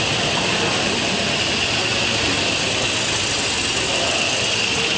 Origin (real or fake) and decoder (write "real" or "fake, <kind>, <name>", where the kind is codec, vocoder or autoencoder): real